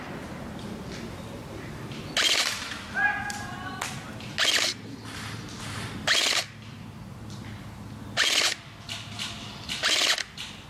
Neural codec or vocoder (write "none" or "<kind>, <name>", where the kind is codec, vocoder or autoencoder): none